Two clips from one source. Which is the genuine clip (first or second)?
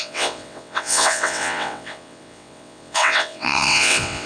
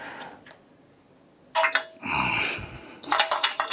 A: second